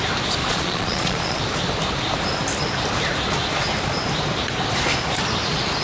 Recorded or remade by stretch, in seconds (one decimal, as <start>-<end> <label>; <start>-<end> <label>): 0.0-0.4 recorded; 0.4-1.4 remade; 1.4-5.8 recorded